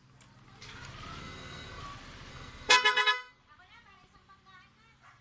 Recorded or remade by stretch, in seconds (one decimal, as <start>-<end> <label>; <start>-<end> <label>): 0.0-1.2 recorded; 1.2-1.8 remade; 1.8-2.3 recorded; 2.3-3.4 remade; 3.4-5.2 recorded